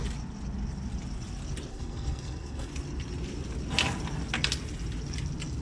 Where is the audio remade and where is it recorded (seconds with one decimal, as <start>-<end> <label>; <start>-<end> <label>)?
0.0-1.7 recorded; 1.7-2.7 remade; 2.7-5.6 recorded